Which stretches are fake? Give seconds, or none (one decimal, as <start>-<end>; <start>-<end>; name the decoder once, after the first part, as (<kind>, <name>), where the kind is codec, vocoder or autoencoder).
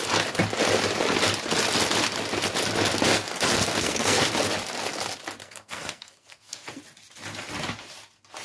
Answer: 3.1-4.3 (codec, SNAC); 5.4-6.8